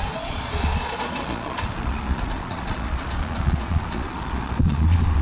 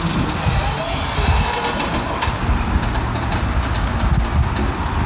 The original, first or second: second